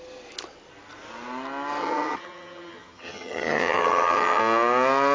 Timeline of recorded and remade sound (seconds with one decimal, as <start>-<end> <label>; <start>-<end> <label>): 0.0-1.8 recorded; 1.8-4.4 remade; 4.4-5.1 recorded